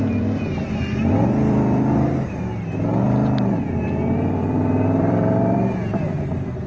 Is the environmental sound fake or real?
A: fake